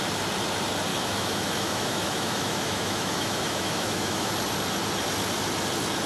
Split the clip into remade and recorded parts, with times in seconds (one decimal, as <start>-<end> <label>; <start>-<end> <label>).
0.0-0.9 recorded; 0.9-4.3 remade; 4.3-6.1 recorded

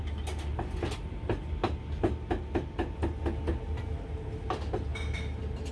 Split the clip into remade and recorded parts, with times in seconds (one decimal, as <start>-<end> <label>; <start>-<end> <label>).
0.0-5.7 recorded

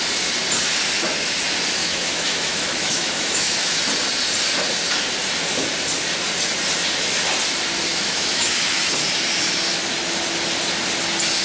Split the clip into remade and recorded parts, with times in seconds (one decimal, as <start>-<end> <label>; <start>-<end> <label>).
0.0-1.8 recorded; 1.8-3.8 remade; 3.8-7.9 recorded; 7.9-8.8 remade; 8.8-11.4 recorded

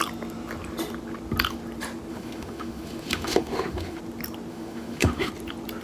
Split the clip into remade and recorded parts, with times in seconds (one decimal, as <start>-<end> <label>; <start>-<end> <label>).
0.0-2.1 recorded; 2.1-4.0 remade; 4.0-4.5 recorded; 4.5-5.3 remade; 5.3-5.8 recorded

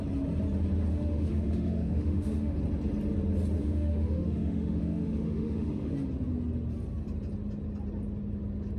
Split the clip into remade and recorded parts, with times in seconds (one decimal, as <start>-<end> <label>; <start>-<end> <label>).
0.0-0.9 recorded; 0.9-2.6 remade; 2.6-3.6 recorded; 3.6-5.9 remade; 5.9-8.8 recorded

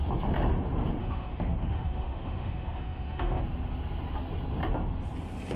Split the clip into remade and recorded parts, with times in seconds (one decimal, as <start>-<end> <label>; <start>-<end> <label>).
0.0-1.0 recorded; 1.0-3.4 remade; 3.4-5.6 recorded

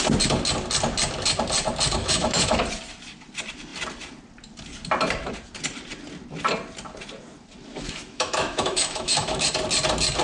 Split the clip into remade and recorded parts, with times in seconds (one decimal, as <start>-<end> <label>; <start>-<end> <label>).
0.0-2.0 recorded; 2.0-2.6 remade; 2.6-7.7 recorded; 7.7-9.5 remade; 9.5-10.2 recorded